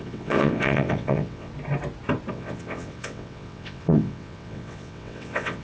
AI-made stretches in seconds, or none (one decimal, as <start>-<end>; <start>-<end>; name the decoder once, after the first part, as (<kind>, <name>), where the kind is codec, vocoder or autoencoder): 0.0-1.5 (vocoder, WaveNeXt); 2.3-5.6